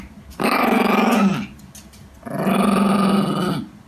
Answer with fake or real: real